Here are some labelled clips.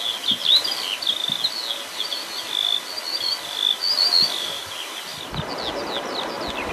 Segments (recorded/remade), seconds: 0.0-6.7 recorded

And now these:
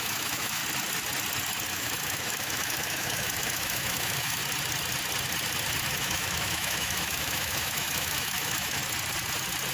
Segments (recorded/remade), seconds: 0.0-0.6 remade; 0.6-1.7 recorded; 1.7-4.4 remade; 4.4-5.9 recorded; 5.9-8.8 remade; 8.8-9.7 recorded